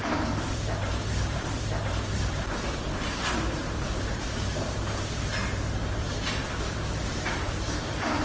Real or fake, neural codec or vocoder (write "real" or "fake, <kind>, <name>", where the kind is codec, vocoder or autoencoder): fake, vocoder, BigVGAN v2